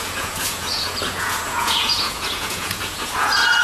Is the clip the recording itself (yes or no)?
no